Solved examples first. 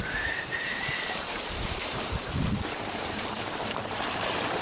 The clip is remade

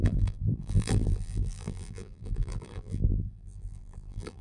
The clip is remade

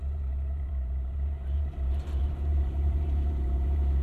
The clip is remade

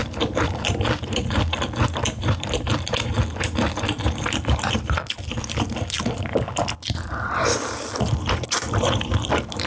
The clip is remade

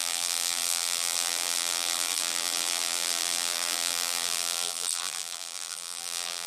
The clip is remade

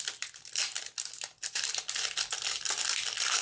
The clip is recorded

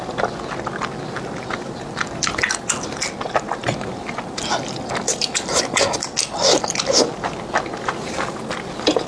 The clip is recorded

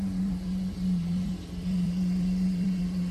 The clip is remade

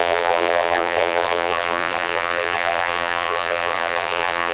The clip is remade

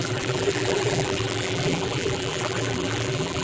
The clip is remade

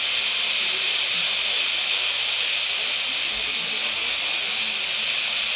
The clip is recorded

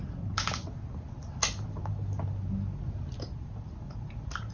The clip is recorded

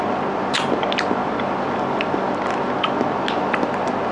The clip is recorded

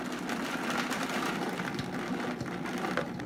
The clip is recorded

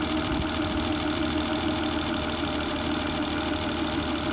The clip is recorded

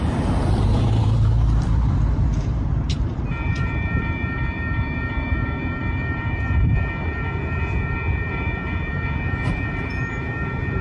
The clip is remade